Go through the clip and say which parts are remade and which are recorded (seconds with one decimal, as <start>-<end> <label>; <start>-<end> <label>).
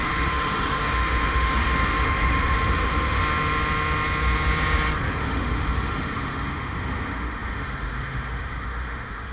0.0-3.2 remade; 3.2-5.2 recorded; 5.2-9.3 remade